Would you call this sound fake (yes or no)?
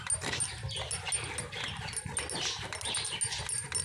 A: no